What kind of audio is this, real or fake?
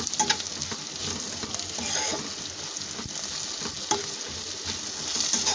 real